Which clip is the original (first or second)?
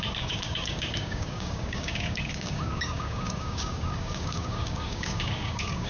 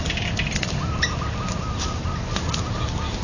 second